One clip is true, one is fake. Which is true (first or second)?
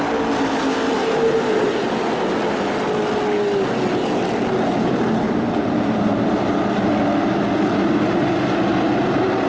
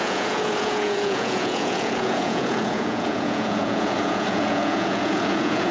first